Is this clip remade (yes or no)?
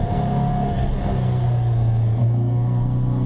yes